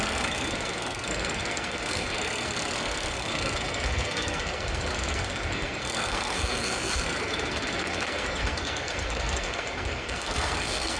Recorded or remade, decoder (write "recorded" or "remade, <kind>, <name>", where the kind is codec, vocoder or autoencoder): remade, codec, SNAC